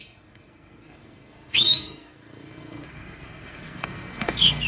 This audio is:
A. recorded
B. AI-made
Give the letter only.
B